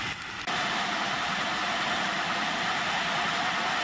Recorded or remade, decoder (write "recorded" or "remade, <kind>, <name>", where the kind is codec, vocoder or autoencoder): recorded